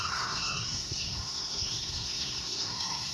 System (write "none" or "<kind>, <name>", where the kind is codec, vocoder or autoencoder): codec, SNAC